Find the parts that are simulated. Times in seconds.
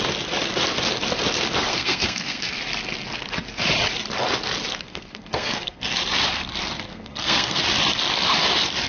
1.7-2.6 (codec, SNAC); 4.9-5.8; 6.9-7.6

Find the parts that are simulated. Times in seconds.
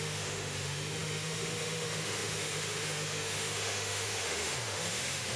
0.0-5.4 (autoencoder, DAC-VAE)